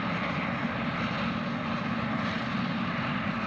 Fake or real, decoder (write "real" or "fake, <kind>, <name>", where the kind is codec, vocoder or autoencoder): real